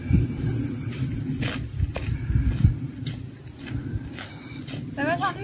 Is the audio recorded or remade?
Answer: recorded